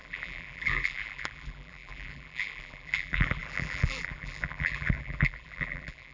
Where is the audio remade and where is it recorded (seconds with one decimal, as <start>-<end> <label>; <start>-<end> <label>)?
0.0-6.1 remade